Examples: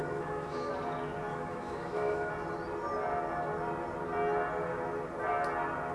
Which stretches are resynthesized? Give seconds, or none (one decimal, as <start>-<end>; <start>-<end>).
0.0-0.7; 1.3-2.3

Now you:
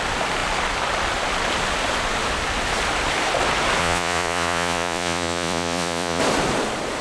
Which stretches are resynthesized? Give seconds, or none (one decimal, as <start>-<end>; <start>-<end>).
3.8-6.2

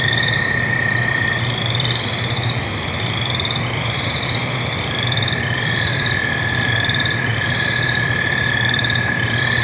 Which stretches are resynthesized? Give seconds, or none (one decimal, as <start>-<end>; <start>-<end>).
0.0-9.6

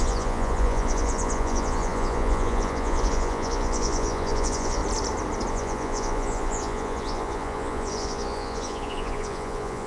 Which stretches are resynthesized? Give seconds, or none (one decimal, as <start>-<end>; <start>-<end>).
0.0-4.8; 5.5-9.9

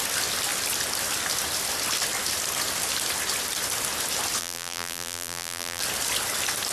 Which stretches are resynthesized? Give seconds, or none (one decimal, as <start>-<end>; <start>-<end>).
4.4-5.8

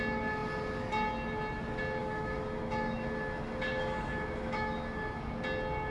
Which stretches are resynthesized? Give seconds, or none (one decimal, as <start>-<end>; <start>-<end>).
2.0-5.2

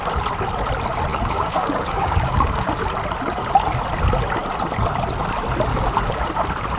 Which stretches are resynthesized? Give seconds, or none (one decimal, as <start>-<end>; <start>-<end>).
1.1-2.8; 5.7-6.2